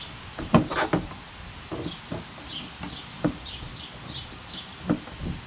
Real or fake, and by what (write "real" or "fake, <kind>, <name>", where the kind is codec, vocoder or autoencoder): real